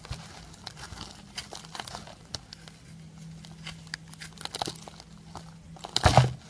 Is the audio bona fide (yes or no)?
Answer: yes